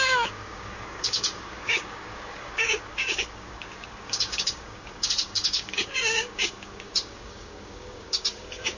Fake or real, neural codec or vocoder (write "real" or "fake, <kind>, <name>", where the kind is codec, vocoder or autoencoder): fake, codec, DAC